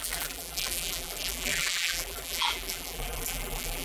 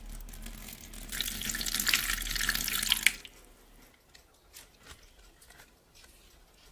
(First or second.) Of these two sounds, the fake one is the first